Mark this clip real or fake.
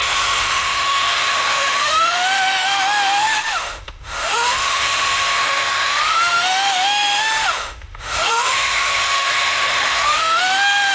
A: fake